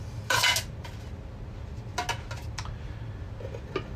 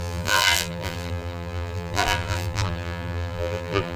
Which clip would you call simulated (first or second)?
second